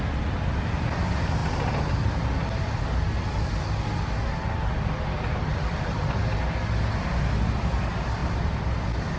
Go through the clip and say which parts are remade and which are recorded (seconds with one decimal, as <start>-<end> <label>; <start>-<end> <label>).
0.0-9.2 recorded